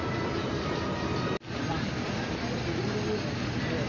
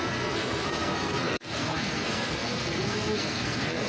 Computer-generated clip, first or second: second